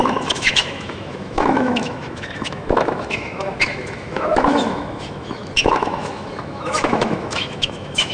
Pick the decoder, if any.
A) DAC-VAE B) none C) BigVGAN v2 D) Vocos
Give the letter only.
A